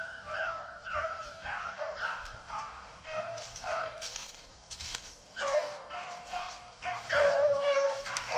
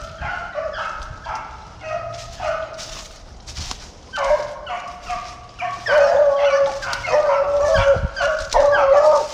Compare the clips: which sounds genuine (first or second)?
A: second